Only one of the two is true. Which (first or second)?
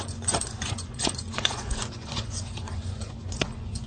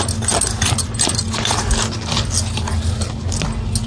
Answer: second